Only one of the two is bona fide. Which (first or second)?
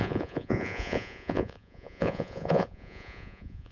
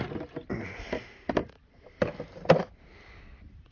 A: second